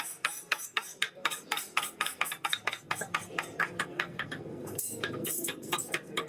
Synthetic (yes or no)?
yes